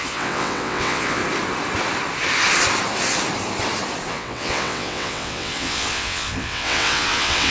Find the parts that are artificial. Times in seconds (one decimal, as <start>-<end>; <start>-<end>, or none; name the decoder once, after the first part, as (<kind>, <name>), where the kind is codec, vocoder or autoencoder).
0.0-1.2 (vocoder, WaveNeXt); 4.1-7.5